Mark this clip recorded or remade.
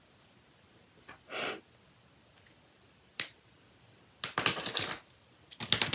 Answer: recorded